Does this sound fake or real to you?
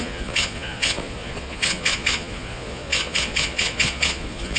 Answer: fake